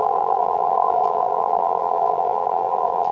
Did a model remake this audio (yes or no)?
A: yes